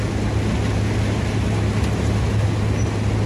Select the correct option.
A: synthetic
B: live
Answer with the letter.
B